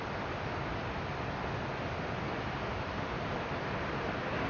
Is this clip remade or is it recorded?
recorded